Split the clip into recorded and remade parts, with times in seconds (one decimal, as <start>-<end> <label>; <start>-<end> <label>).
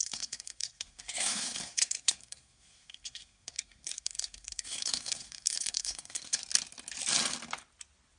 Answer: 0.0-6.4 remade; 6.4-8.2 recorded